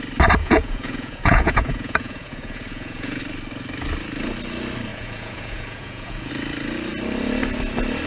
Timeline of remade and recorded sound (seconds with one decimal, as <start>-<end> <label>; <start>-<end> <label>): 0.0-0.4 recorded; 0.4-3.2 remade; 3.2-4.9 recorded; 4.9-6.3 remade; 6.3-8.1 recorded